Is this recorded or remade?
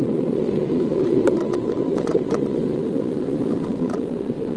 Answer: remade